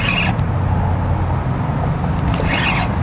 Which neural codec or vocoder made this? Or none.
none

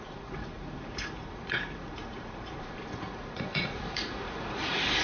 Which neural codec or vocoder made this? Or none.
vocoder, Vocos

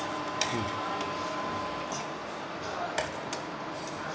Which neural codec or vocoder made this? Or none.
none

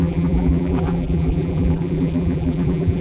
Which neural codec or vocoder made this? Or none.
vocoder, BigVGAN v2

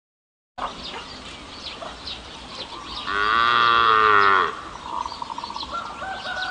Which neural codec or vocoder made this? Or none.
none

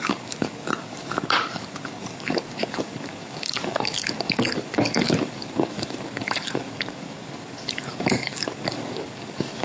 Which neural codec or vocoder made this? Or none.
codec, DAC